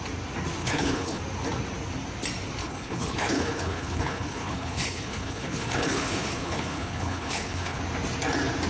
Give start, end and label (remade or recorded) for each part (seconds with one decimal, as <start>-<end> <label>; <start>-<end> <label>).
0.0-0.6 recorded; 0.6-1.2 remade; 1.2-2.6 recorded; 2.6-7.8 remade; 7.8-8.7 recorded